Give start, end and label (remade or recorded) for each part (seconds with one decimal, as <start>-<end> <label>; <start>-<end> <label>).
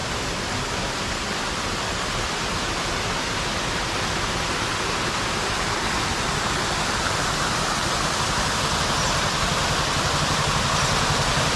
0.0-11.6 recorded